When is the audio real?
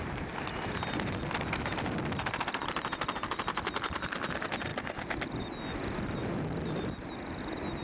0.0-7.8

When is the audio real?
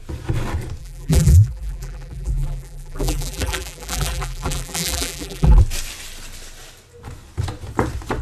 0.0-0.8; 5.6-8.2